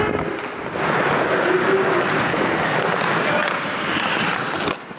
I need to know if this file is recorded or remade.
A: recorded